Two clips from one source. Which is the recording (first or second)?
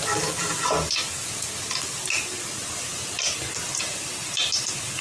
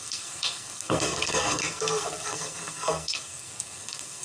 first